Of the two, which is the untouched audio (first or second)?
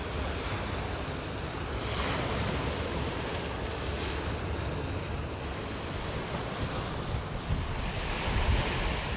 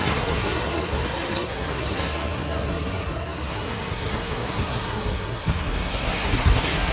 first